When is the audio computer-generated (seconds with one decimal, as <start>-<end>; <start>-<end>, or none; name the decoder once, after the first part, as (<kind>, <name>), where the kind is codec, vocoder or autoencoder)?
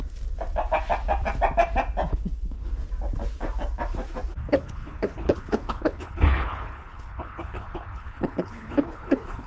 2.1-2.7 (codec, HILCodec); 4.5-9.5